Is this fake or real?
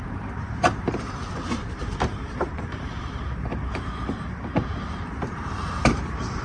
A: fake